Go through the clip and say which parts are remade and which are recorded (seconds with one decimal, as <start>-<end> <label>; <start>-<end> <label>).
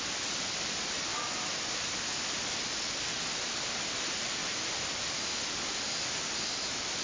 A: 0.0-4.4 recorded; 4.4-4.9 remade; 4.9-7.0 recorded